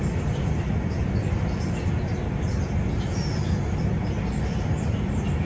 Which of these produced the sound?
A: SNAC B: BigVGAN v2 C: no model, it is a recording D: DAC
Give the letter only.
C